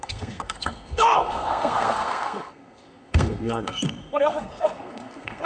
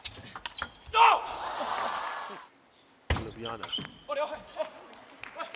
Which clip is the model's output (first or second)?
first